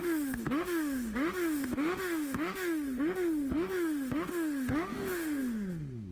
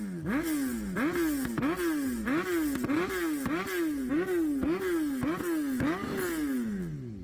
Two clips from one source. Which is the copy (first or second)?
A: first